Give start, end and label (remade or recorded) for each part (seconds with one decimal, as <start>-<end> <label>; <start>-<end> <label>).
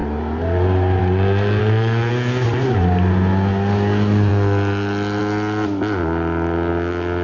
0.0-1.6 recorded; 1.6-2.1 remade; 2.1-7.2 recorded